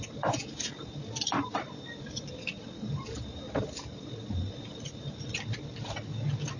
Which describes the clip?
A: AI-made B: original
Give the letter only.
B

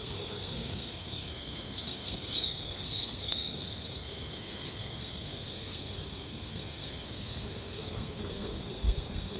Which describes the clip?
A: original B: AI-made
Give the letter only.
B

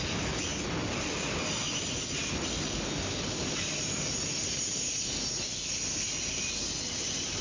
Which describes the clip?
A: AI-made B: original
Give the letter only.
B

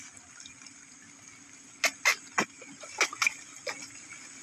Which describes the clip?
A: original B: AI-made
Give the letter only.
A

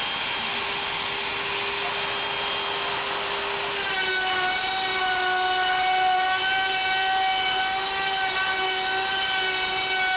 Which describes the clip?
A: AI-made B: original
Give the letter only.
B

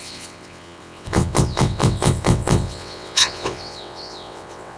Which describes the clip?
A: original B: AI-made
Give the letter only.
B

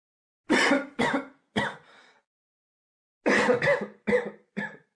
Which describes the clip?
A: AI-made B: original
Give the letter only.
B